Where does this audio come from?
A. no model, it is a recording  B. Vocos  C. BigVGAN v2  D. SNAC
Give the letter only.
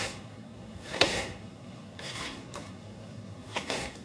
D